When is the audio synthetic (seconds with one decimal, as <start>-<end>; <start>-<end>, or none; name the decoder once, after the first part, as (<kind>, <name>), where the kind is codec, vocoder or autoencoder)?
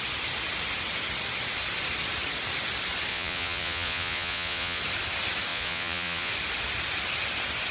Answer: 3.1-4.8 (vocoder, Vocos); 5.5-6.3